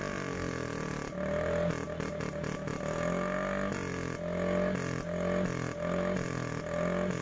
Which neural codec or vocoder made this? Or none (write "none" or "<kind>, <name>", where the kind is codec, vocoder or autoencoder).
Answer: none